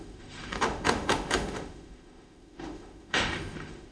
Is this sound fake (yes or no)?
yes